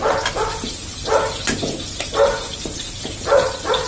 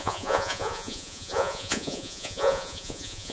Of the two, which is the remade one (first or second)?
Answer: second